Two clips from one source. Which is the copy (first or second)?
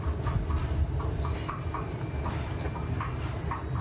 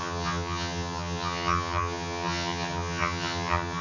second